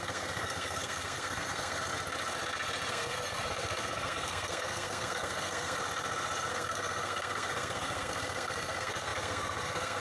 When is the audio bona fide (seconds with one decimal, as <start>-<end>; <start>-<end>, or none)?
1.9-2.9; 5.8-6.5